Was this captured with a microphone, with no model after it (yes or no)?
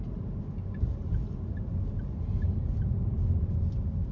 yes